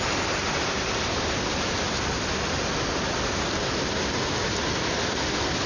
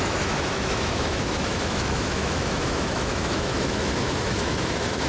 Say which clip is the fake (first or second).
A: second